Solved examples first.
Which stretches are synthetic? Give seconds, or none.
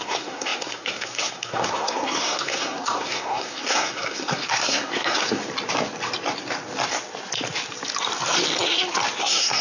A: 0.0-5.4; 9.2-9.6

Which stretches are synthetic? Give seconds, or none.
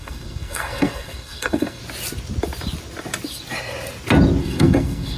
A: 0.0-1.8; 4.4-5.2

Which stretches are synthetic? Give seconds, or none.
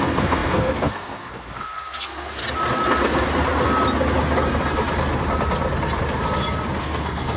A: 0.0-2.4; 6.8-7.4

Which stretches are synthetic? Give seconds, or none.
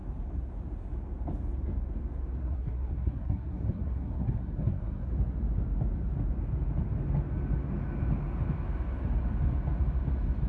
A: 2.4-5.1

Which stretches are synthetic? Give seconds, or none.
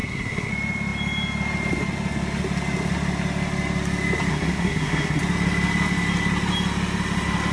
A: 0.0-0.5; 4.3-5.2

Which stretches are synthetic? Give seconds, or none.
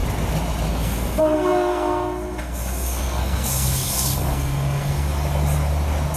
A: 0.7-5.1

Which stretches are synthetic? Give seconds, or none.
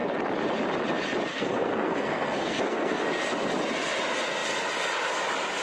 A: 1.3-3.0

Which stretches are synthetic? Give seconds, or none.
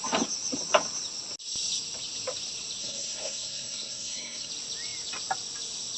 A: 2.8-4.5